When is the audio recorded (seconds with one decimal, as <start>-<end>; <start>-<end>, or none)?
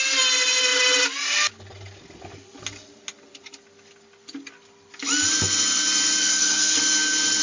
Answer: 0.0-6.2; 6.8-7.4